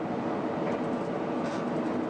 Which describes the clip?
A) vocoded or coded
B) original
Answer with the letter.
B